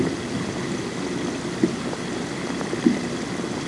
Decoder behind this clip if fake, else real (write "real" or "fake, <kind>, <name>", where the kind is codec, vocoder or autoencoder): real